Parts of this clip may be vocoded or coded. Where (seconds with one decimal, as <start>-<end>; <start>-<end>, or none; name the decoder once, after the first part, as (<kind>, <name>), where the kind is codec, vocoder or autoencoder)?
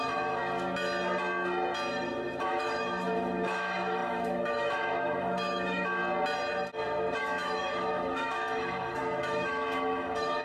0.0-0.4 (autoencoder, DAC-VAE); 2.1-6.0; 7.2-10.4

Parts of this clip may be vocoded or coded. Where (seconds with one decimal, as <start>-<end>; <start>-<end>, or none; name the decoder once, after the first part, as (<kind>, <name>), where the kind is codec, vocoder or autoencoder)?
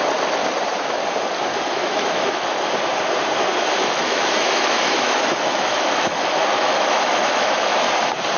1.5-2.6 (autoencoder, DAC-VAE); 3.8-7.9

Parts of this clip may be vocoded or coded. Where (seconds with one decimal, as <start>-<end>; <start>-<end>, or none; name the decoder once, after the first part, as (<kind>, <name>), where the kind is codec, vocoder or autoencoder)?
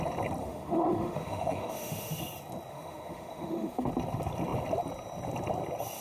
0.4-2.2 (autoencoder, DAC-VAE); 2.7-3.9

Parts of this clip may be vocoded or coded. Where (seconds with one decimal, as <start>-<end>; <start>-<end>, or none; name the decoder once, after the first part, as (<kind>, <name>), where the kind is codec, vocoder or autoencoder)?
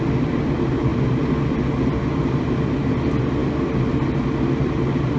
none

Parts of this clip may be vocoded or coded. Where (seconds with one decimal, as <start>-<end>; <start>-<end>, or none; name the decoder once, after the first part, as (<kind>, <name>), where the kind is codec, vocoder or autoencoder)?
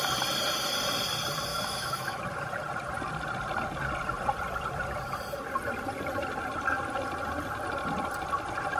1.5-2.2 (autoencoder, DAC-VAE)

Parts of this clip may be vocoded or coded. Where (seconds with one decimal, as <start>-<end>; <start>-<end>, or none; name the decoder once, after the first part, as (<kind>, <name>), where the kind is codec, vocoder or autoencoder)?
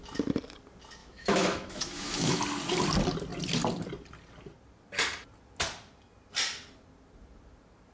1.0-2.4 (autoencoder, DAC-VAE)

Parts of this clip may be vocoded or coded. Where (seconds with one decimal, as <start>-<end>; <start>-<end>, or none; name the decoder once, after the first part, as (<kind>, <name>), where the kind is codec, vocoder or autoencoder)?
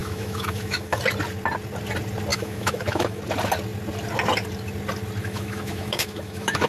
0.0-1.0 (autoencoder, DAC-VAE); 2.3-3.2; 5.2-6.7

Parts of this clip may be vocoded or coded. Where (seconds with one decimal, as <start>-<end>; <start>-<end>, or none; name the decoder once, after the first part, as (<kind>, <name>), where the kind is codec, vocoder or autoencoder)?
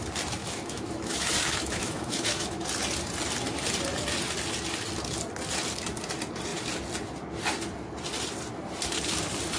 0.4-2.6 (autoencoder, DAC-VAE)